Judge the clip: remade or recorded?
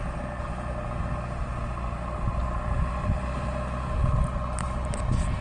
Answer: recorded